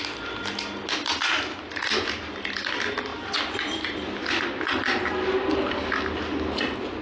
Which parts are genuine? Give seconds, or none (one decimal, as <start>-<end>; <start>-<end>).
0.0-7.0